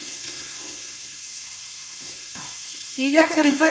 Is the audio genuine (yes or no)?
no